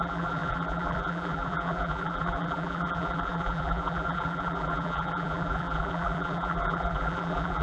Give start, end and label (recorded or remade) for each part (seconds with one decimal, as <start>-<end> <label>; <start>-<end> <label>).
0.0-7.6 remade